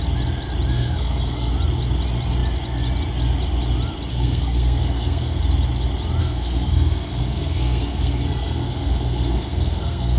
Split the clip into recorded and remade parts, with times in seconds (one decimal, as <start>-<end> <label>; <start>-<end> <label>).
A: 0.0-0.7 recorded; 0.7-1.5 remade; 1.5-4.1 recorded; 4.1-5.4 remade; 5.4-6.2 recorded; 6.2-10.2 remade